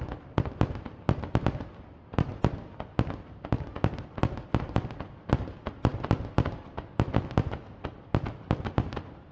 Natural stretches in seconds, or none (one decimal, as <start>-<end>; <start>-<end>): 0.0-9.3